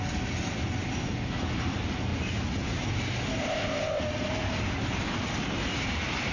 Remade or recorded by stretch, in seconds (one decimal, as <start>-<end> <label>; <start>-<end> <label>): 0.0-3.4 recorded; 3.4-4.0 remade; 4.0-6.3 recorded